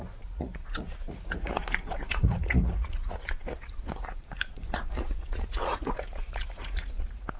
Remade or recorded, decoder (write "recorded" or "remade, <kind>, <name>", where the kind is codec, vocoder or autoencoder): remade, vocoder, Vocos